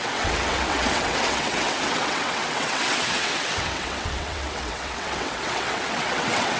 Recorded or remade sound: remade